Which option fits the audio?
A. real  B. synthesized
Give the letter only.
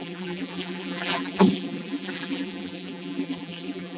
B